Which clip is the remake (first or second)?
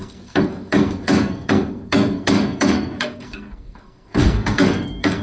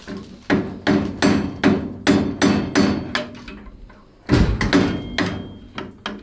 first